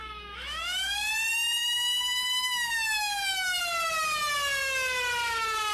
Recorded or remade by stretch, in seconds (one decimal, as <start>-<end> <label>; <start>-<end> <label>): 0.0-1.1 remade; 1.1-1.6 recorded; 1.6-3.6 remade; 3.6-5.7 recorded